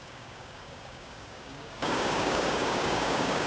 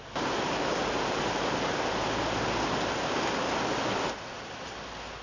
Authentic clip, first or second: second